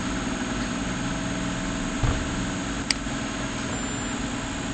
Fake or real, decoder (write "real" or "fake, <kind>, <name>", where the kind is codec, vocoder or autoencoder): real